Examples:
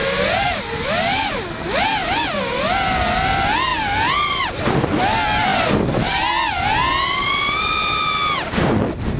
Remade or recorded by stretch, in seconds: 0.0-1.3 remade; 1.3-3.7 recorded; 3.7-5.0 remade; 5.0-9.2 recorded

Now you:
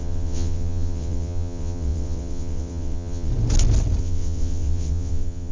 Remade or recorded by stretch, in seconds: 0.0-3.3 remade; 3.3-4.0 recorded; 4.0-5.5 remade

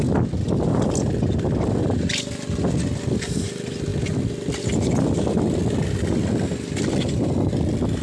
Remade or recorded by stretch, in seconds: 0.0-8.0 recorded

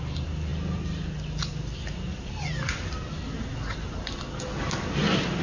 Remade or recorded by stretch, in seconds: 0.0-5.4 recorded

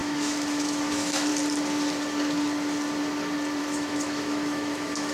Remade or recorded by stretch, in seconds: 0.0-1.3 remade; 1.3-3.6 recorded; 3.6-5.1 remade

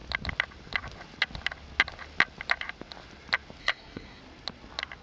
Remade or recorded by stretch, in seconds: 0.0-3.6 recorded; 3.6-4.2 remade; 4.2-5.0 recorded

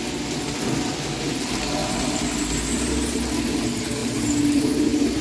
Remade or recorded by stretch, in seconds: 0.0-4.0 recorded; 4.0-5.2 remade